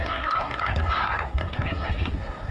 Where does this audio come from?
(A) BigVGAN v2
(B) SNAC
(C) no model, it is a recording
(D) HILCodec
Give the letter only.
B